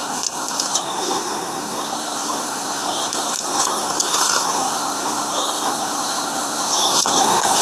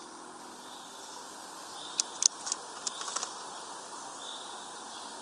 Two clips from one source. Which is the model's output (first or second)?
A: first